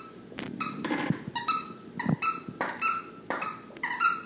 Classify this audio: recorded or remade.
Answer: recorded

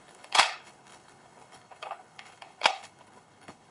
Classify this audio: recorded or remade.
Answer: remade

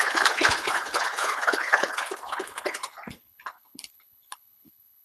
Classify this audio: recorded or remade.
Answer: remade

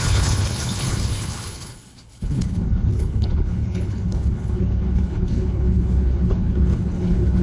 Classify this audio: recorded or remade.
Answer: remade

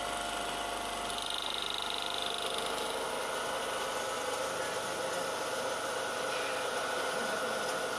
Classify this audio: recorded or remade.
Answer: recorded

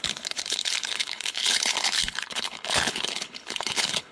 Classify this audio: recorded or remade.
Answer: remade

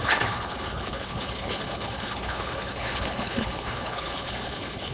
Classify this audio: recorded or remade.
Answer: remade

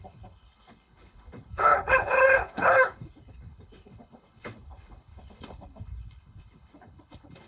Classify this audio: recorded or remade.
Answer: remade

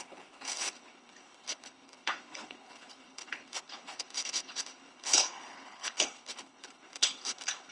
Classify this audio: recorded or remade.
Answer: remade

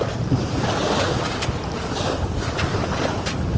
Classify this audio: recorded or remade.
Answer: recorded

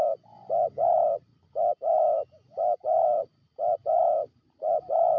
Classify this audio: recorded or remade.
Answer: recorded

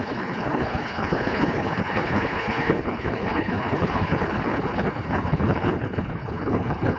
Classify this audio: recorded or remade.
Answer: remade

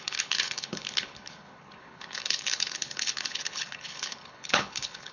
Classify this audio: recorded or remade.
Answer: remade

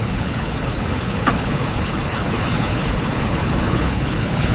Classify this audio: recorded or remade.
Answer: remade